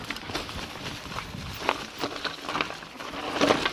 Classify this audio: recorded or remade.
recorded